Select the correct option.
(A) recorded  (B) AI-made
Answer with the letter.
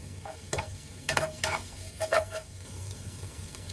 B